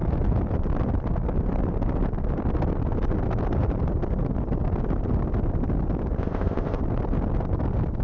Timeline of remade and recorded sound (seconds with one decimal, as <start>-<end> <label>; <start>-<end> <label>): 0.0-6.2 recorded; 6.2-6.8 remade; 6.8-8.0 recorded